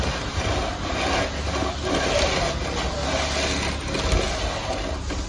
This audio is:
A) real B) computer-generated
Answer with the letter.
A